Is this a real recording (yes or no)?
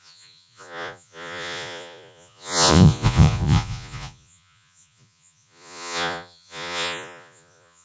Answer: no